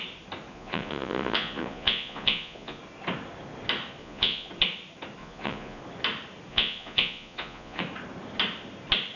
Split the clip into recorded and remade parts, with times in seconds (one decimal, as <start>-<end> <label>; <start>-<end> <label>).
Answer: 0.0-0.5 recorded; 0.5-2.8 remade; 2.8-4.0 recorded; 4.0-4.5 remade; 4.5-5.2 recorded; 5.2-5.8 remade; 5.8-6.5 recorded; 6.5-7.8 remade; 7.8-9.2 recorded